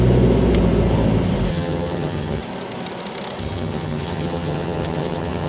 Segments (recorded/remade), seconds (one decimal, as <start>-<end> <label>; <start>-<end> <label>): 0.0-1.5 recorded; 1.5-2.4 remade; 2.4-3.4 recorded; 3.4-5.5 remade